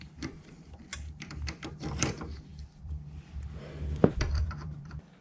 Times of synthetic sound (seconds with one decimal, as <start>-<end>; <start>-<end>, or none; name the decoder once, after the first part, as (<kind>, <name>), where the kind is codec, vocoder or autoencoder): 0.0-5.2 (vocoder, BigVGAN v2)